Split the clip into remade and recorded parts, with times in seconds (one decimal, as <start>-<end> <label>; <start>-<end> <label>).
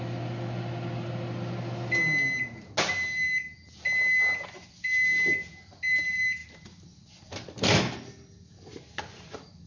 0.0-9.7 recorded